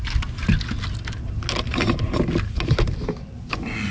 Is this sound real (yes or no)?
yes